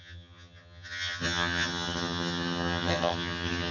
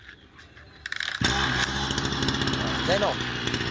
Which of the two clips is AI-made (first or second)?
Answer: first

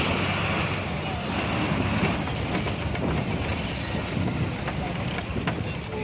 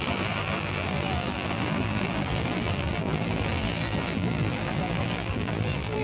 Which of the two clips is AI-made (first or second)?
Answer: second